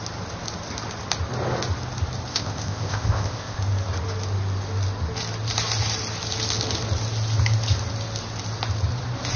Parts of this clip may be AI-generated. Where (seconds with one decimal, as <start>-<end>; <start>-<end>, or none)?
2.3-3.6